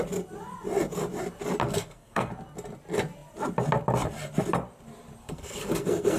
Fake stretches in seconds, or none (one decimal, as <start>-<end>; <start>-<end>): 1.6-2.3; 5.2-6.2